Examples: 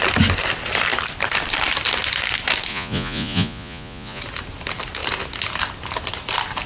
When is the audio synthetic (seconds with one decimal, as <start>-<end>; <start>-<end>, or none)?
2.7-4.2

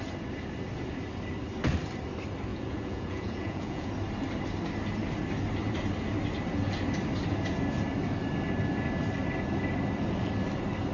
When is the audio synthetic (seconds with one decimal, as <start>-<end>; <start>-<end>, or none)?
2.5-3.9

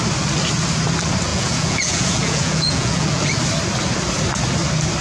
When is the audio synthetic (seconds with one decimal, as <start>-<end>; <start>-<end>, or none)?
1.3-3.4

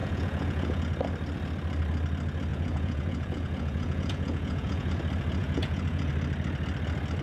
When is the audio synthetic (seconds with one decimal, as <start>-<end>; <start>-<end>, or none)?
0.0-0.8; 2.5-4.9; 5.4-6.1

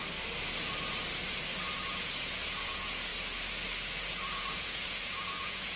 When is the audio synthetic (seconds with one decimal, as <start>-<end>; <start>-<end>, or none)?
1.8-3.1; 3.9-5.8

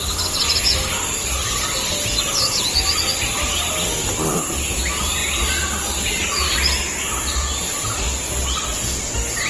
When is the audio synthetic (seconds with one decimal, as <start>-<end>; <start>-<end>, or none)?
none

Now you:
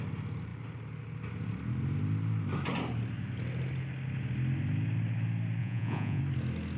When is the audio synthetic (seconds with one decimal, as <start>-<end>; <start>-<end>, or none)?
5.6-6.2

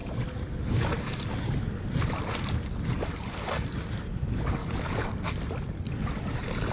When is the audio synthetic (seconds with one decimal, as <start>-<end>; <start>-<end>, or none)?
none